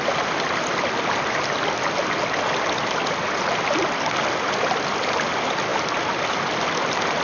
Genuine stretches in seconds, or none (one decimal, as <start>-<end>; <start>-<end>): 0.0-7.2